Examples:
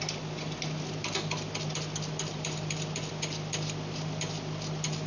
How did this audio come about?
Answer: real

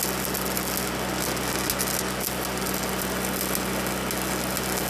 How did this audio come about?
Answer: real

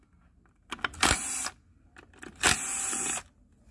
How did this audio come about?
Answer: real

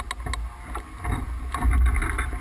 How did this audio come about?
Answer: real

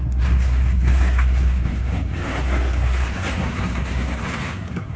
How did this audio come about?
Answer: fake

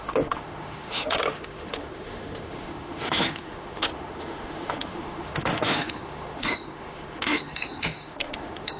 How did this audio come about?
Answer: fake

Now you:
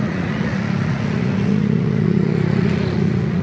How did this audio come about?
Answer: fake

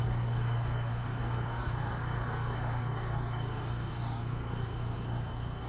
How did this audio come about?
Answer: fake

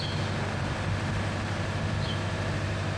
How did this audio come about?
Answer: real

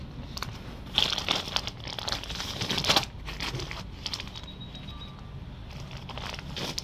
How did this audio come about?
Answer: real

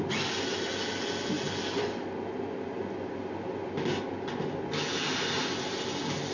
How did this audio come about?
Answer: real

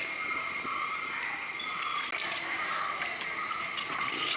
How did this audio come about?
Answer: real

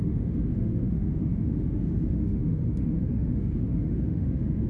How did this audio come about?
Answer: fake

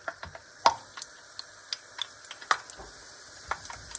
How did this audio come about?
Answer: real